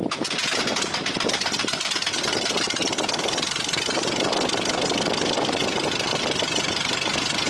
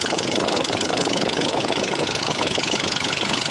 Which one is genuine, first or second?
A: first